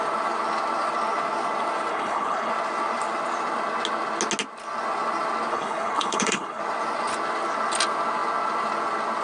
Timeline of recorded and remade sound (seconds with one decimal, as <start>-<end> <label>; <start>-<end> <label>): 0.0-1.9 recorded; 1.9-2.5 remade; 2.5-5.5 recorded; 5.5-6.6 remade; 6.6-9.2 recorded